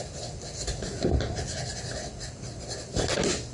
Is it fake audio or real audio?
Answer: real